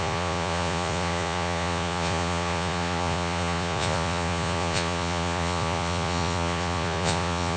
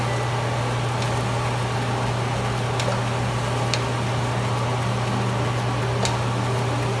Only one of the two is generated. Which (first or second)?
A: first